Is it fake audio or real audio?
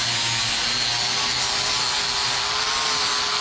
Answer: real